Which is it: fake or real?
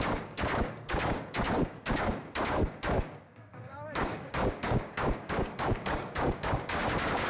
fake